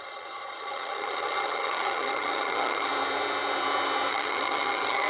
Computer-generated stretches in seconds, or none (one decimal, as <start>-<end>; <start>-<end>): 0.0-2.9; 4.1-5.1